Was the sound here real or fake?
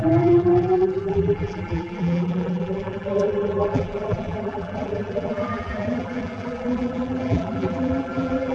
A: fake